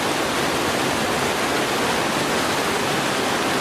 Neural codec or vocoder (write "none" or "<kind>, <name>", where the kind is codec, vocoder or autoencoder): none